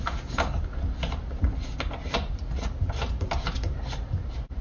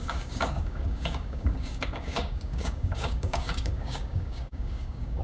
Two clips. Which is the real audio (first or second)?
first